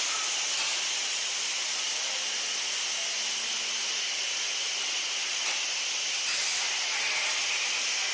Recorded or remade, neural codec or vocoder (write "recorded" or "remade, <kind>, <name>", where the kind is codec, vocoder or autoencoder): recorded